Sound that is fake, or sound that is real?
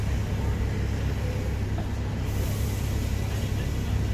real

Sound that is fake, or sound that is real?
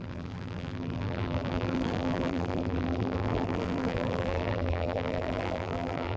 fake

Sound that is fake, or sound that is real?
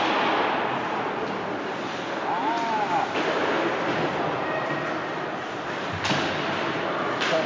real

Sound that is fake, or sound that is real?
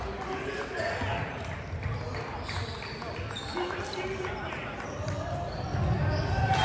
real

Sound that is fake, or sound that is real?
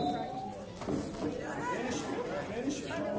real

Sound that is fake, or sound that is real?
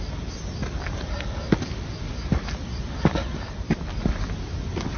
real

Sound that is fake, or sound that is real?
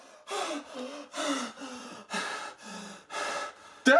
real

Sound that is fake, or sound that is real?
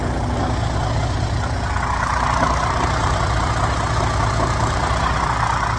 real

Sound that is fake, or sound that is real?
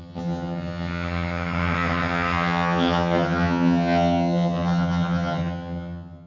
fake